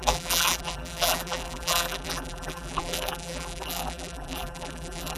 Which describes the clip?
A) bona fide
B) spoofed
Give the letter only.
B